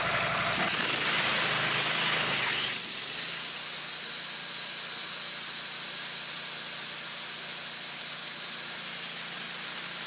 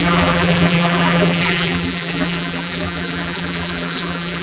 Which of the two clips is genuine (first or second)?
first